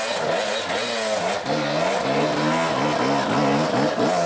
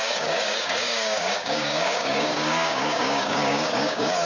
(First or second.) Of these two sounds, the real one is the first